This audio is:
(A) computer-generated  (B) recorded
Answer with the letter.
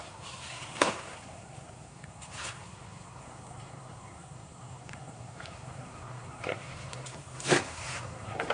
A